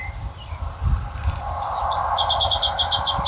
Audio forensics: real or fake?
real